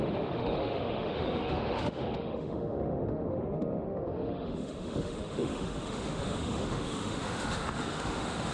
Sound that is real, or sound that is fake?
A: fake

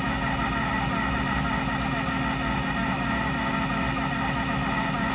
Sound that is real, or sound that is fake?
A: real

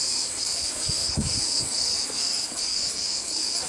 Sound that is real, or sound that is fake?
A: fake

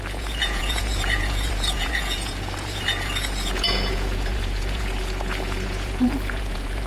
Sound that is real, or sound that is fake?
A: fake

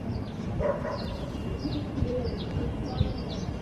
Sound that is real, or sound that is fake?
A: fake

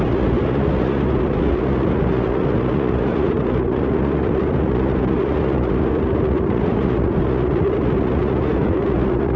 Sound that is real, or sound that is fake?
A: fake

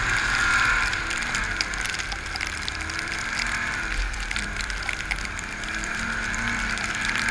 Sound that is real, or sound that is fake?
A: fake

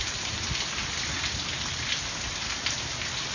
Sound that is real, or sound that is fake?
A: real